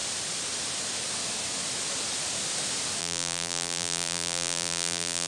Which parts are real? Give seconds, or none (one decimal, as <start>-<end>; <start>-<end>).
0.0-3.0